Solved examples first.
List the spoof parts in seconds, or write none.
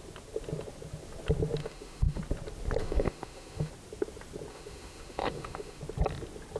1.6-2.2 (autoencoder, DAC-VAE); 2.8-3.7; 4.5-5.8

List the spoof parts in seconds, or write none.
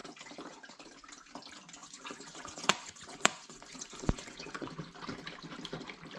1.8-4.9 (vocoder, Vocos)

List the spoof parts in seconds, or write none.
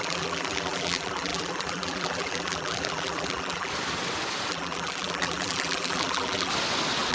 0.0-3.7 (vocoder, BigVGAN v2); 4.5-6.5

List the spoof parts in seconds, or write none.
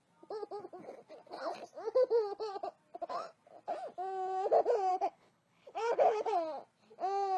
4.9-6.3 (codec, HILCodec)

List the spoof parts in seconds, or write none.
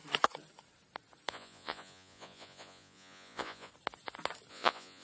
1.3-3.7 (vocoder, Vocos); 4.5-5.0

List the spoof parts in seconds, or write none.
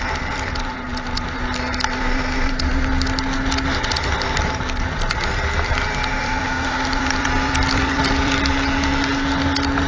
6.1-8.4 (vocoder, BigVGAN v2)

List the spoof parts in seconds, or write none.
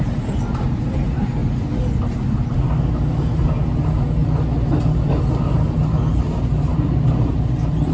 0.0-1.4 (vocoder, BigVGAN v2); 6.1-7.9